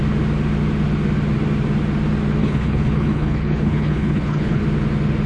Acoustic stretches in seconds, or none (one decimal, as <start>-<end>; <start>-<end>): 0.0-2.4; 4.6-5.3